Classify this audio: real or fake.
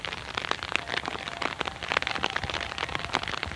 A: real